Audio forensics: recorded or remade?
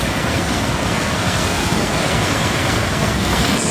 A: remade